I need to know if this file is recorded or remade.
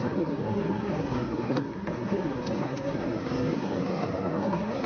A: remade